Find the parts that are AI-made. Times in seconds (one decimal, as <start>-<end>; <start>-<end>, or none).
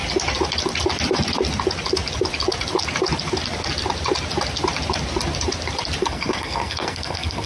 6.0-7.5